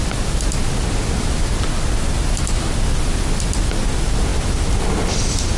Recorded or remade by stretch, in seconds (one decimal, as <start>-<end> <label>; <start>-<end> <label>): 0.0-5.6 recorded